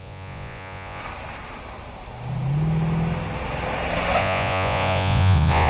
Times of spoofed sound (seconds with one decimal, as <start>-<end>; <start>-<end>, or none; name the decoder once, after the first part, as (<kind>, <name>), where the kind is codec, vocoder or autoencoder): 0.0-1.0 (vocoder, Vocos); 4.2-5.7